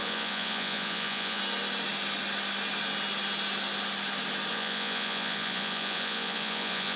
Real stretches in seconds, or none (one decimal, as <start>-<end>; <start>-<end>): 1.4-4.5